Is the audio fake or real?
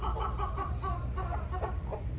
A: fake